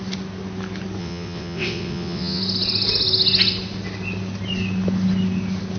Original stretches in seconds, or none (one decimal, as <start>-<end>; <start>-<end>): 0.0-1.0; 2.4-5.8